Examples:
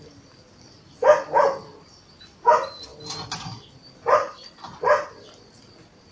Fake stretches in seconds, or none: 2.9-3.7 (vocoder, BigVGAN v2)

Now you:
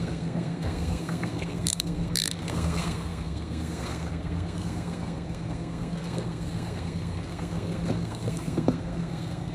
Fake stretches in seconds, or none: 0.0-9.5 (codec, SNAC)

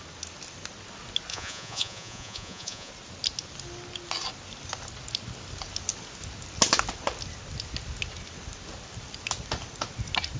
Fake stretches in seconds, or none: 1.3-2.9 (vocoder, Vocos)

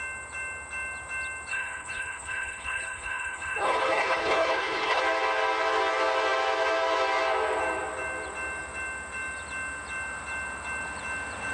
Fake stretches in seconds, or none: 1.5-5.0 (codec, HILCodec)

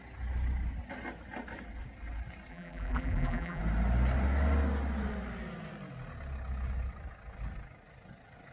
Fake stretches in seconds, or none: 2.5-3.6 (vocoder, BigVGAN v2)